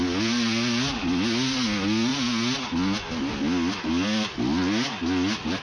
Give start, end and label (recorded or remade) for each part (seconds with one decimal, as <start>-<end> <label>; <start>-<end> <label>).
0.0-5.6 recorded